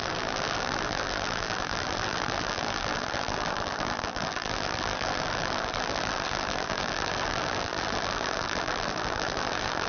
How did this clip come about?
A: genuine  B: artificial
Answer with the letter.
B